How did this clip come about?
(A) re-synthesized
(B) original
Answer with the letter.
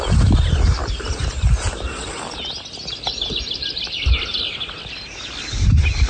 B